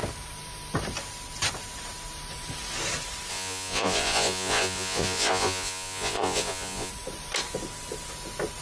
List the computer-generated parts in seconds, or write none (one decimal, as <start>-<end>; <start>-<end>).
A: 3.3-6.9